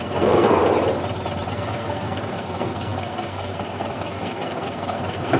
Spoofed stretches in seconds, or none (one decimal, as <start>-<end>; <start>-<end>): 0.0-0.6; 1.5-5.4